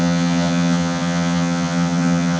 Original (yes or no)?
no